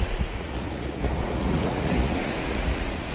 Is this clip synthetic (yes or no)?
yes